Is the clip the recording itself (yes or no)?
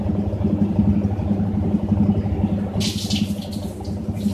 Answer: yes